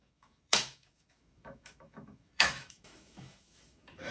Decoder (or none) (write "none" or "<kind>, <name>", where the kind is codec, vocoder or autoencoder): autoencoder, DAC-VAE